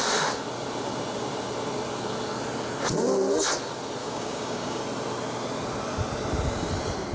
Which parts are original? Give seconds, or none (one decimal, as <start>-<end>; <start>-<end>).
0.0-4.0; 4.8-7.1